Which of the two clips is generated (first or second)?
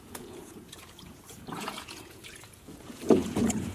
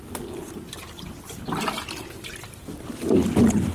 first